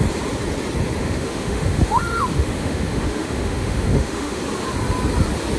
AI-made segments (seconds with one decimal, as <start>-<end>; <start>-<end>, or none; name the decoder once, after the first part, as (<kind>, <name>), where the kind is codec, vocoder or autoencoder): 1.0-4.4 (autoencoder, DAC-VAE)